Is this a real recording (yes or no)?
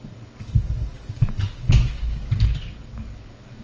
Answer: no